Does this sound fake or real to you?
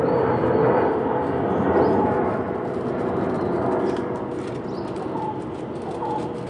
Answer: real